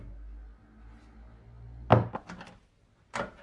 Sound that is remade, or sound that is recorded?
recorded